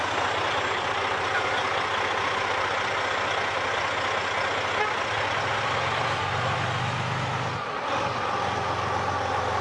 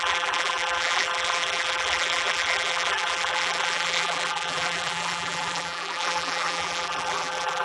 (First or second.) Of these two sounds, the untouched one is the first